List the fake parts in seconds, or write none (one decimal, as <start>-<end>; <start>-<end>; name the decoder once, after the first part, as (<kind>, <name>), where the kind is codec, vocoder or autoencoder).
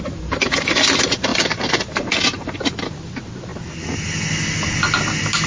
none